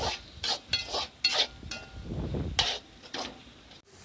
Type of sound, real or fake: real